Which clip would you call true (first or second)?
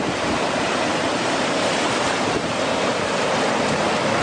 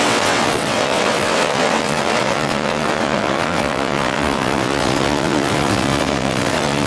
first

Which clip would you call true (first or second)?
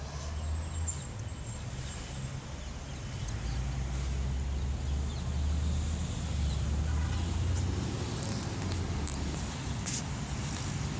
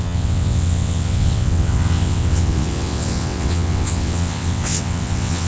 first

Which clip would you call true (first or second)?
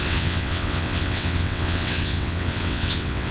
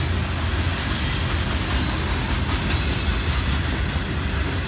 second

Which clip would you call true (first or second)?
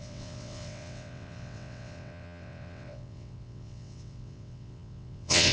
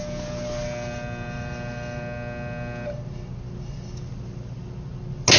second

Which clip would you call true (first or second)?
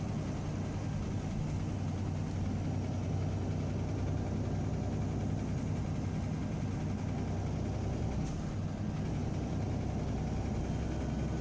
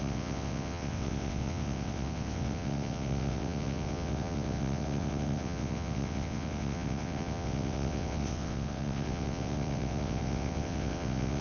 first